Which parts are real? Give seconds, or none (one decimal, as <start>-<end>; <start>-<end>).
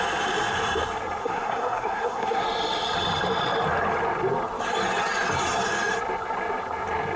0.0-1.2; 2.4-7.2